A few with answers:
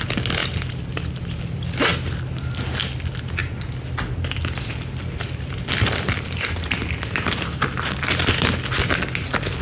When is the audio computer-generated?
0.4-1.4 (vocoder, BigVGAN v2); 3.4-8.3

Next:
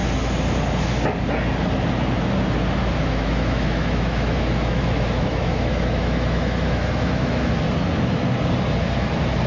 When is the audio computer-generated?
2.8-7.5 (autoencoder, DAC-VAE)

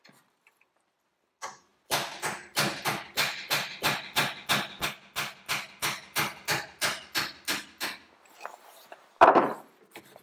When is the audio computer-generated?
none

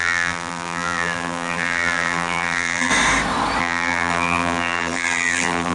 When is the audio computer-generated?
0.0-2.9 (vocoder, BigVGAN v2); 3.6-5.7

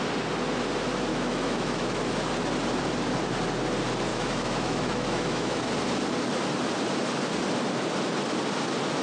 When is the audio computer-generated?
1.1-2.0 (autoencoder, DAC-VAE); 4.1-5.7

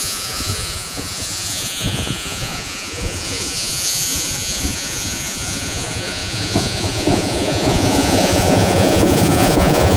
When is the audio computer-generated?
0.0-10.0 (vocoder, Vocos)